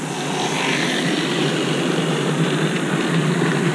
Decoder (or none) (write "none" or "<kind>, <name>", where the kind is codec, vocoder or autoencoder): none